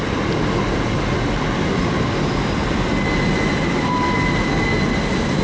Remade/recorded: recorded